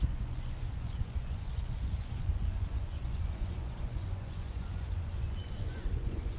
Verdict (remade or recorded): remade